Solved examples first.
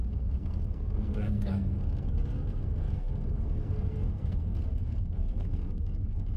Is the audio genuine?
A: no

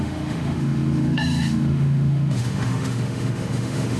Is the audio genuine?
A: no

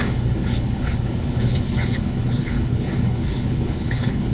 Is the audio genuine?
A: no